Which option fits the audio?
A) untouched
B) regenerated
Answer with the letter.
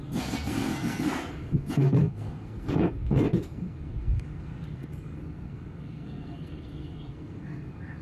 B